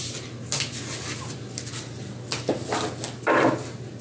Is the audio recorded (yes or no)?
yes